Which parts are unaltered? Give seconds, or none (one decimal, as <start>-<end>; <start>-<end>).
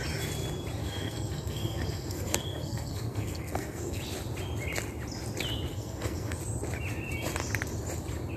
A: 0.0-0.8; 4.0-5.7; 6.4-8.4